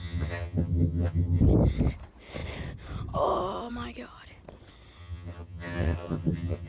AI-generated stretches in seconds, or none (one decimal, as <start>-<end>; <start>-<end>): 0.0-1.4; 5.0-6.7